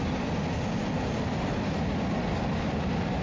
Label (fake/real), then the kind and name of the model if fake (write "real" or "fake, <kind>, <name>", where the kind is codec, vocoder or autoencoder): real